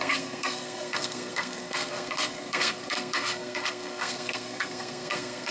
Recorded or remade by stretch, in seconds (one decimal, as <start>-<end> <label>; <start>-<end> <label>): 0.0-5.5 remade